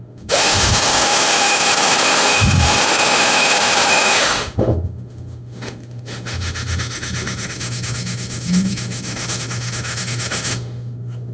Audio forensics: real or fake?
fake